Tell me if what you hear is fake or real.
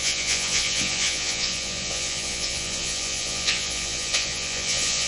fake